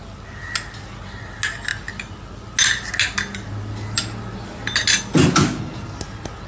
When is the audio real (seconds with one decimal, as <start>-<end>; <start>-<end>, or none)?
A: 0.0-6.5